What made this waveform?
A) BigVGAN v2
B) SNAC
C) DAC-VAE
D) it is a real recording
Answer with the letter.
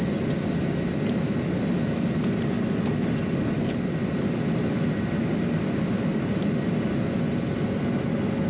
D